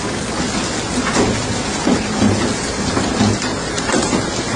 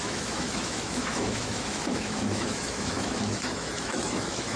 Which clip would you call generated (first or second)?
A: second